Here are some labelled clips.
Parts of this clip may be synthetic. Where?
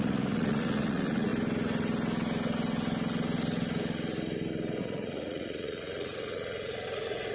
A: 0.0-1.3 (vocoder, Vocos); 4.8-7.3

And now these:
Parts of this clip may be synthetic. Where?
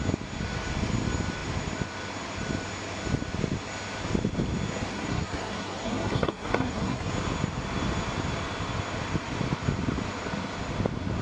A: 4.9-7.1 (codec, SNAC)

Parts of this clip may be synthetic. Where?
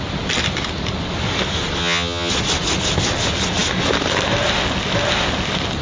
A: 1.8-2.3 (vocoder, HiFi-GAN)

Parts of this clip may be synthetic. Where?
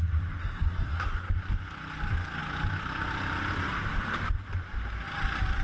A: 0.4-1.3 (codec, SNAC)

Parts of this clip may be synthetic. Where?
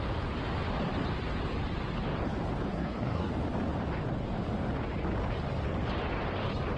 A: 2.7-3.3 (codec, SNAC)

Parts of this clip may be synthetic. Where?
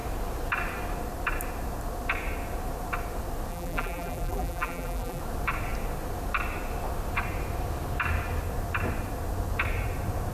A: 3.5-5.2 (vocoder, BigVGAN v2)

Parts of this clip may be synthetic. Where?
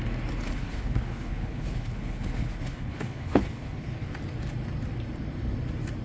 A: 0.5-4.1 (codec, HILCodec)